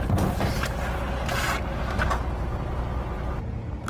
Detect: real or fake real